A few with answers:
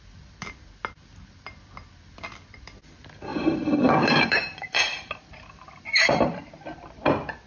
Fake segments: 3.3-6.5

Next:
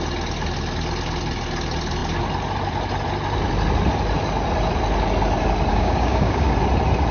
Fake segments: 5.7-6.5

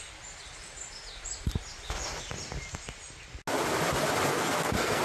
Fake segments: 4.3-5.0

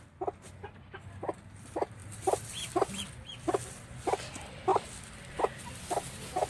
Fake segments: 2.0-3.0; 4.7-5.4

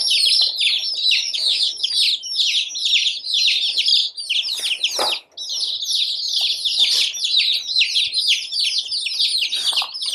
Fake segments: 1.2-1.9

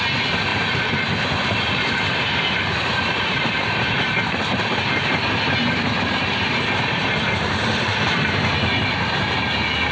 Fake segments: 0.5-4.3; 6.2-9.2